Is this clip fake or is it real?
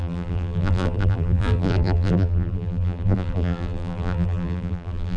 fake